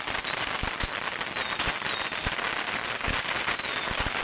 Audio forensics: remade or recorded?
recorded